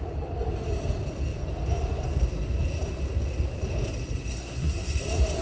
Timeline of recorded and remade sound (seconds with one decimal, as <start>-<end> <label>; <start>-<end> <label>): 0.0-4.3 recorded; 4.3-5.0 remade; 5.0-5.4 recorded